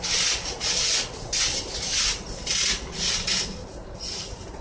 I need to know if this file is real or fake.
real